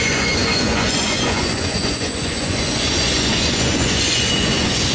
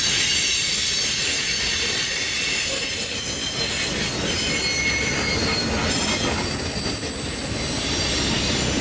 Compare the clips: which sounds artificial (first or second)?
first